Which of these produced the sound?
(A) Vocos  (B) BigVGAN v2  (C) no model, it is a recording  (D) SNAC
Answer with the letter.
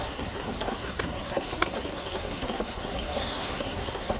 D